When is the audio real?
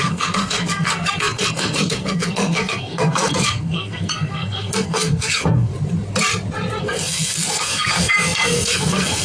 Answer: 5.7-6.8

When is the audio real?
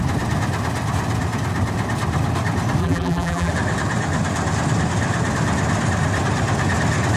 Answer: 0.0-2.8; 3.5-7.2